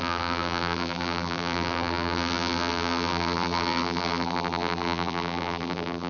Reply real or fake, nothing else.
fake